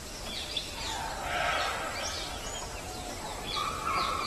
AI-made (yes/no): no